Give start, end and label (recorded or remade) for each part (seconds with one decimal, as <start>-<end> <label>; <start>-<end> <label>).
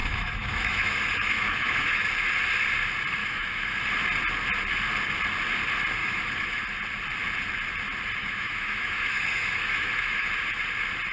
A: 0.0-2.0 remade; 2.0-3.2 recorded; 3.2-3.7 remade; 3.7-6.0 recorded; 6.0-6.6 remade; 6.6-8.2 recorded; 8.2-10.3 remade; 10.3-11.1 recorded